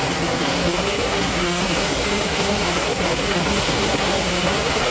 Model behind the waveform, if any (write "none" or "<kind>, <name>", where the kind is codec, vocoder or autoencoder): codec, SNAC